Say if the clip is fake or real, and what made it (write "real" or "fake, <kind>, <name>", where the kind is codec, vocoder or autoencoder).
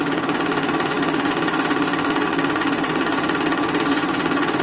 fake, vocoder, Vocos